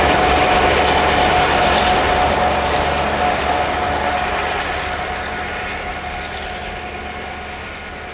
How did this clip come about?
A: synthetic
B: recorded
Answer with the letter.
B